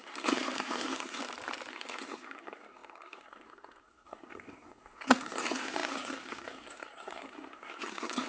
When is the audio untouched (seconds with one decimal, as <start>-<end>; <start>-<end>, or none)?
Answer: 1.2-1.7